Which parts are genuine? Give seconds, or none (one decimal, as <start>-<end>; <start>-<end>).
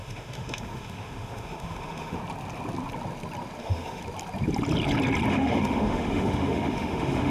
2.2-3.6; 4.0-5.3